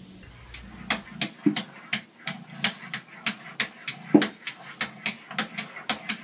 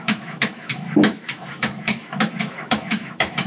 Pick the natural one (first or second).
first